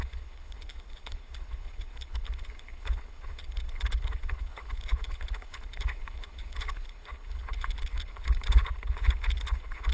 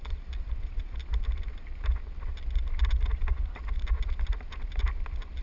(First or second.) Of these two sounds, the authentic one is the second